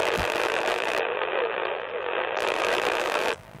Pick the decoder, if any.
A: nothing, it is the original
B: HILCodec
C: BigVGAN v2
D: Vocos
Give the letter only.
C